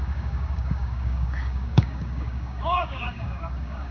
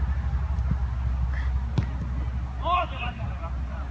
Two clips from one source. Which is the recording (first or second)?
second